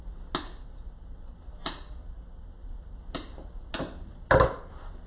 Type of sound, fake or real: real